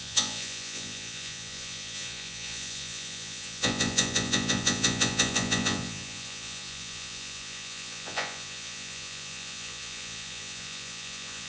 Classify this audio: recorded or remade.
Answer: remade